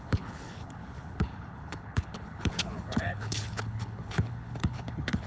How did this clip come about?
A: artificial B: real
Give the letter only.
A